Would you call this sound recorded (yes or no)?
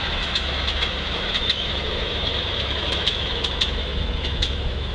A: no